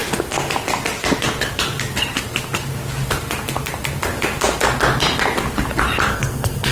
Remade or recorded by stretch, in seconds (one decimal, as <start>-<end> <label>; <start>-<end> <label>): 0.0-6.1 recorded; 6.1-6.7 remade